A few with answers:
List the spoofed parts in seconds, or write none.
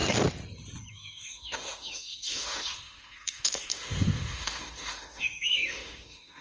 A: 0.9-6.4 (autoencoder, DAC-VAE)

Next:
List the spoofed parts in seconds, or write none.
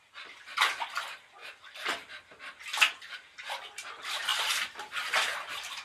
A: none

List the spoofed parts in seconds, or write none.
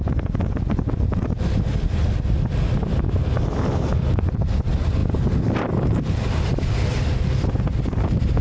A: none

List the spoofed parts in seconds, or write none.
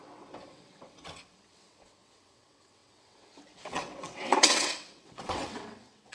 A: 0.0-6.1 (vocoder, WaveNeXt)